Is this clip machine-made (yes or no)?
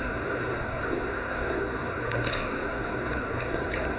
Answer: yes